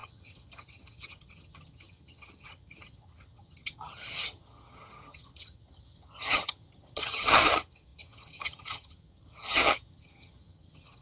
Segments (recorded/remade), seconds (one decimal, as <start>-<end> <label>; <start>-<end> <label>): 0.0-11.0 remade

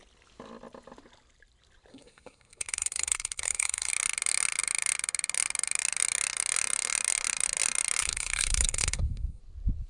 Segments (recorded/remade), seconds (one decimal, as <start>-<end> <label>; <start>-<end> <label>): 0.0-1.9 recorded; 1.9-3.9 remade; 3.9-8.0 recorded; 8.0-9.4 remade; 9.4-9.9 recorded

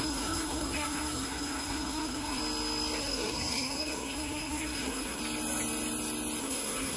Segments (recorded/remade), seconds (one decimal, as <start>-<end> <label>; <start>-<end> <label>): 0.0-2.4 remade; 2.4-3.0 recorded; 3.0-5.2 remade; 5.2-6.4 recorded; 6.4-7.0 remade

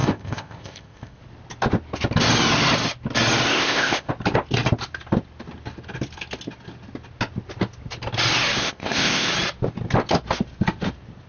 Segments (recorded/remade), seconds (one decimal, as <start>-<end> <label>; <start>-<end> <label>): 0.0-1.2 remade; 1.2-3.5 recorded; 3.5-4.1 remade; 4.1-8.6 recorded; 8.6-9.3 remade; 9.3-11.3 recorded

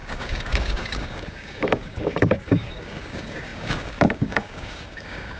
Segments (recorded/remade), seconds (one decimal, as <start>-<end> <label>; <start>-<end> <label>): 0.0-5.4 remade

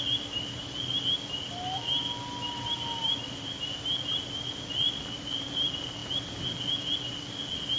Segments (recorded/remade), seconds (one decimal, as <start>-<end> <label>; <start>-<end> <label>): 0.0-7.8 recorded